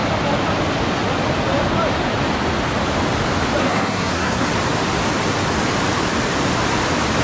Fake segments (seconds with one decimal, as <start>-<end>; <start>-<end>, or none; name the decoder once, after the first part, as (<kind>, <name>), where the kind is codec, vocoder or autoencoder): 3.6-4.5 (codec, SNAC)

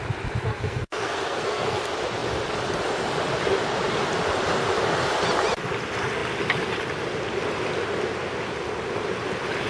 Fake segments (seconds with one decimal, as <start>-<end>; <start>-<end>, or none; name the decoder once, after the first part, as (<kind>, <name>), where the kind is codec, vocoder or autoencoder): 0.5-1.8 (codec, SNAC)